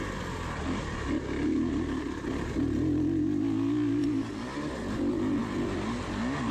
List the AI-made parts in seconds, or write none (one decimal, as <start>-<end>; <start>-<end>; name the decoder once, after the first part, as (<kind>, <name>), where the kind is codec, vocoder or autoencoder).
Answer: none